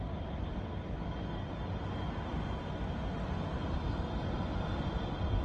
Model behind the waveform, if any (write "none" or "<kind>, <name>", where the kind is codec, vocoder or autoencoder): none